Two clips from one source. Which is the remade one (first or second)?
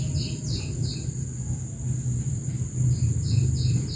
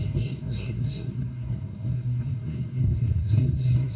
second